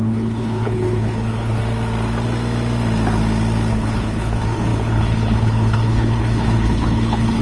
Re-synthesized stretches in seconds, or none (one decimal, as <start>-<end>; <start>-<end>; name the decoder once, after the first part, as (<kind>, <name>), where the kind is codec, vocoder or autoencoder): 0.0-1.6 (codec, HILCodec); 3.7-7.4